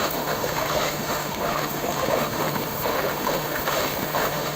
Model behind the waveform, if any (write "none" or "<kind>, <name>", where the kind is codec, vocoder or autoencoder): autoencoder, DAC-VAE